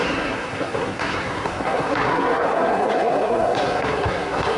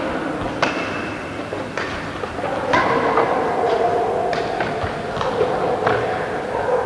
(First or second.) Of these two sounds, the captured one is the second